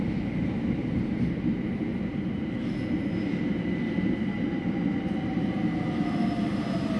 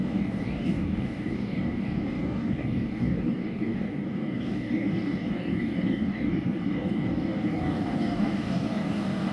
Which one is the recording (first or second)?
first